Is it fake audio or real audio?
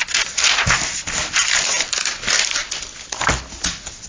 real